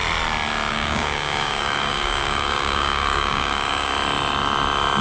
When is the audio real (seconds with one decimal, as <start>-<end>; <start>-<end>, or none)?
0.0-0.7; 3.9-5.0

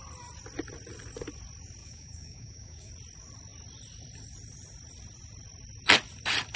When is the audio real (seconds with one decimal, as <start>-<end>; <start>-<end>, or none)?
0.0-1.8; 2.9-6.6

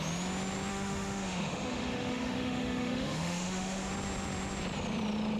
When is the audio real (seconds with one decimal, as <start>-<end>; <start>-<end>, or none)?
0.0-0.7; 3.9-5.4

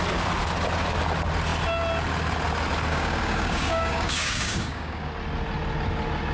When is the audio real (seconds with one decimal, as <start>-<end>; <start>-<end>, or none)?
0.0-2.9; 5.1-6.3